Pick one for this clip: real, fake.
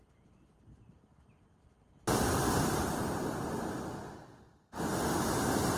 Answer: real